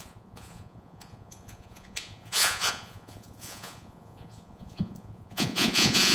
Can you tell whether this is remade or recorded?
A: remade